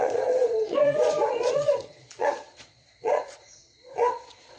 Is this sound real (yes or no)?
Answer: no